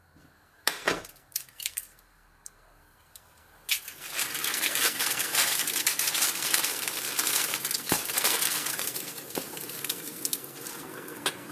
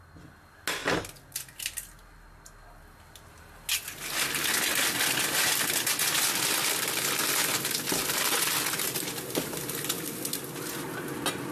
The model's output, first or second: first